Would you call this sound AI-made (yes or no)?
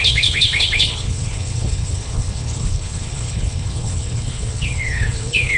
yes